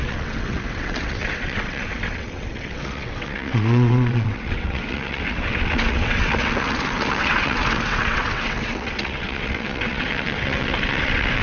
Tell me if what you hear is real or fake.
fake